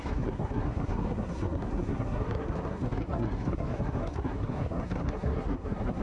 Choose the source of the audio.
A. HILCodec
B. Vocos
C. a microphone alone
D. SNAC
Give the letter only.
D